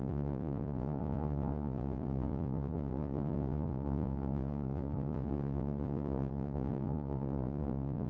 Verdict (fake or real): fake